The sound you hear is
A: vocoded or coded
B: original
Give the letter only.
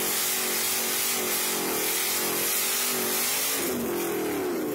B